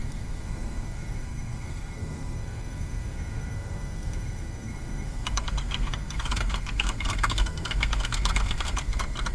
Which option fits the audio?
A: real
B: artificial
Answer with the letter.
B